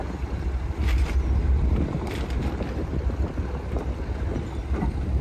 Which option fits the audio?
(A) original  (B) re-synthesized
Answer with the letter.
A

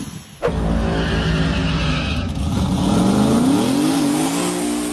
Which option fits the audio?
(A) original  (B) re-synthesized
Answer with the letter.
A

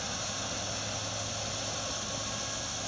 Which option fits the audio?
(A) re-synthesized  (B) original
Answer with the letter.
B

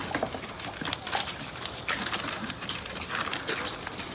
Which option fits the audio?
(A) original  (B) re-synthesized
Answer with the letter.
B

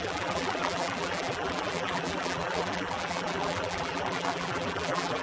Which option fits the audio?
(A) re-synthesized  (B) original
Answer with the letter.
A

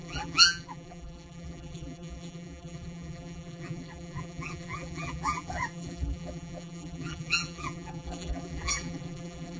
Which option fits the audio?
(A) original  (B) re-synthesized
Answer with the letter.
B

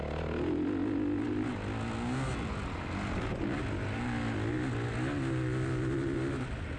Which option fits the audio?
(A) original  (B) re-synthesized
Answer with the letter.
A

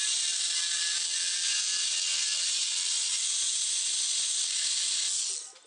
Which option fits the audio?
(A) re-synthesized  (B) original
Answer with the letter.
B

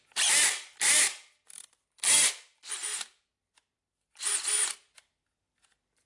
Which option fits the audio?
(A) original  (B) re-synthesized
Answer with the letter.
B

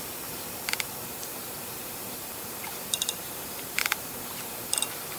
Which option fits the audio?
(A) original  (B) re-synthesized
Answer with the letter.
B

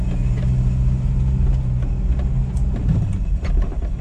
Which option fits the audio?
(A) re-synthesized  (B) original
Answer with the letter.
B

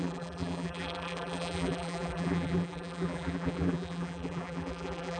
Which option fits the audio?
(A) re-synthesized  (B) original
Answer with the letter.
A